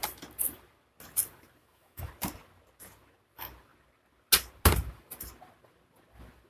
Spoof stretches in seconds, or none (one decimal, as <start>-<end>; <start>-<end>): 1.6-2.1